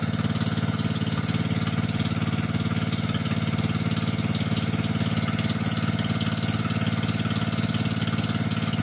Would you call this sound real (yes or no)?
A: yes